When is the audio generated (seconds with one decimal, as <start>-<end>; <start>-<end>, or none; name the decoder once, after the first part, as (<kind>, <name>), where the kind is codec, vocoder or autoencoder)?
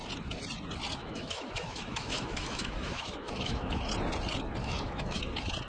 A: 1.0-3.8 (autoencoder, DAC-VAE); 4.6-5.2